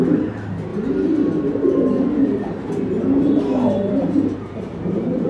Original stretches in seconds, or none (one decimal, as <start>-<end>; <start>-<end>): 0.7-3.9